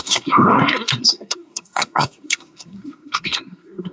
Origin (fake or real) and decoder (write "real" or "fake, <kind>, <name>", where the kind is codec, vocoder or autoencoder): fake, codec, SNAC